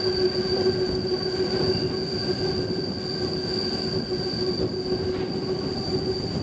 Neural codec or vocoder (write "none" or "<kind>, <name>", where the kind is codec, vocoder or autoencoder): none